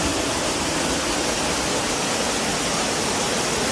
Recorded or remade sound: recorded